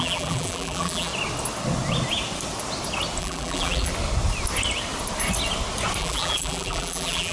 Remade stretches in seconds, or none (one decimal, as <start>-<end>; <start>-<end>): 0.0-1.1; 3.2-3.9; 6.0-7.3